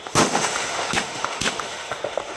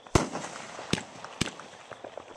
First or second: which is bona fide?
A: second